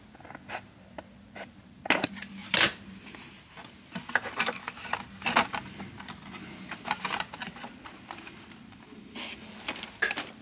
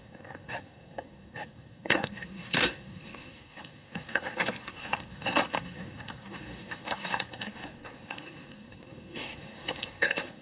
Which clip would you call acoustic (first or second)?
first